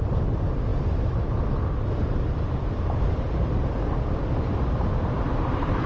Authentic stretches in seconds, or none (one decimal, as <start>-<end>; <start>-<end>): none